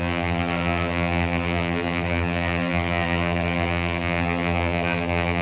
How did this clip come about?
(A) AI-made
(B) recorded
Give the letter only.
A